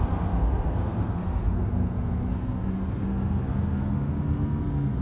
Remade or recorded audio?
remade